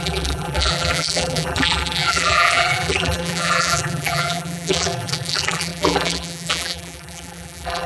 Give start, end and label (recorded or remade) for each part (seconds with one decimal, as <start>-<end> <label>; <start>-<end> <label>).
0.0-7.9 remade